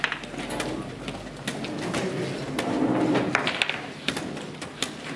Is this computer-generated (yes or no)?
no